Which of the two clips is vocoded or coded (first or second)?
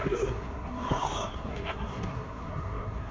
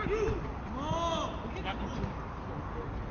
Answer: first